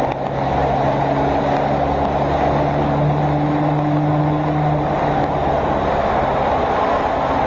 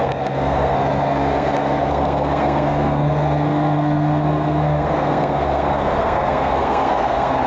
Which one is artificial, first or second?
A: second